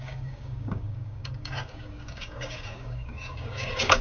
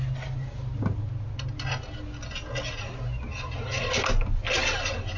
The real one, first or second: second